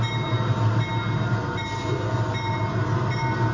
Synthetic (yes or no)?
no